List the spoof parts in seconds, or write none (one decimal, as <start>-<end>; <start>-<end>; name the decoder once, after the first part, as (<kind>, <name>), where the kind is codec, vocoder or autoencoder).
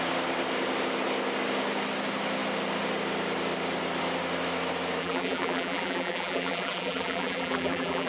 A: 5.0-8.1 (vocoder, BigVGAN v2)